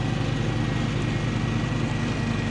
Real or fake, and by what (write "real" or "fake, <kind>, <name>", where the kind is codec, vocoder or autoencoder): real